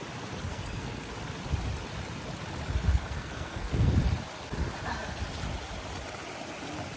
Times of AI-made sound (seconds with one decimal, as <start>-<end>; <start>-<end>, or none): 0.5-1.1; 2.9-3.9